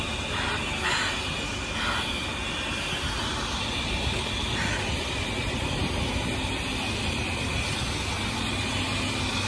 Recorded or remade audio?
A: recorded